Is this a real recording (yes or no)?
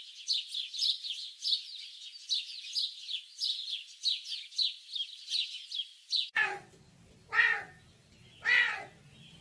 yes